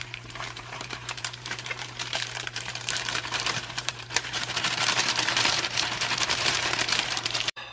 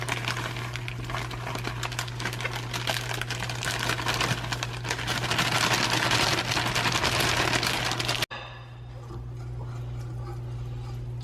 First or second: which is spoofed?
first